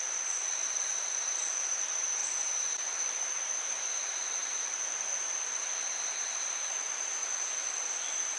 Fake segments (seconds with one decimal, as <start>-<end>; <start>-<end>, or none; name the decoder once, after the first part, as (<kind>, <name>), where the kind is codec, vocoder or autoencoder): 0.0-8.4 (vocoder, BigVGAN v2)